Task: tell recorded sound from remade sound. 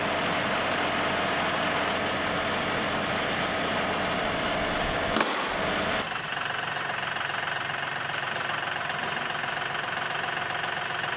recorded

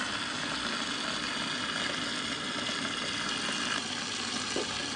recorded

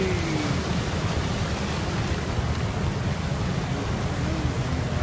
recorded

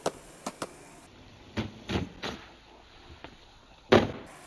recorded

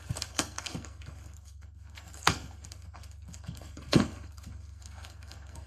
remade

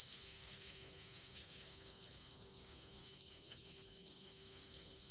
remade